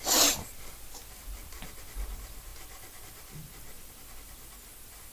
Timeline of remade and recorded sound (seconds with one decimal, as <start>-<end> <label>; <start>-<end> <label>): 0.0-5.1 recorded